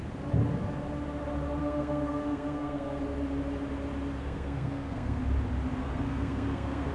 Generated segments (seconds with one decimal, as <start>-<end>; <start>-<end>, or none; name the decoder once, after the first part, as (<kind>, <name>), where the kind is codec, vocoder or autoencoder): 1.6-3.0 (codec, SNAC); 4.2-5.2; 5.8-6.9